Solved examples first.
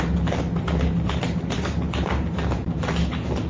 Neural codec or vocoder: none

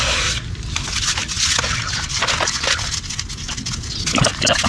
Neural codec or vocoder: none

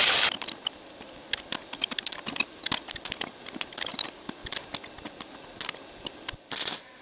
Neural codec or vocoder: none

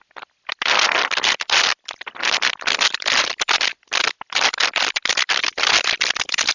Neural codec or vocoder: none